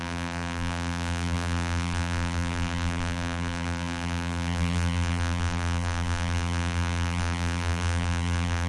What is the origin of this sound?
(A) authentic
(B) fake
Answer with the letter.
B